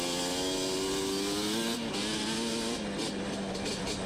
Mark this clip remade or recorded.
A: recorded